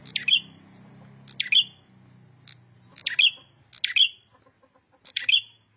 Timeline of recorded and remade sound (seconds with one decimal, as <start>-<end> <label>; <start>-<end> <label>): 0.0-0.9 remade; 0.9-4.4 recorded; 4.4-5.8 remade